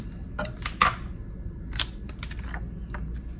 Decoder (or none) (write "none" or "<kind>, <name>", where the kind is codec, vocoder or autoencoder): none